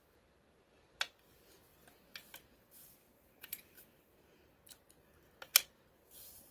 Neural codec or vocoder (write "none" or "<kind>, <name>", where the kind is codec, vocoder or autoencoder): none